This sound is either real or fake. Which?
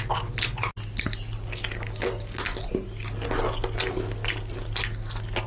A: real